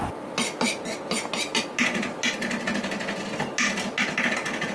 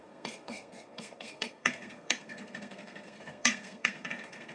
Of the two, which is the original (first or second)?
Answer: first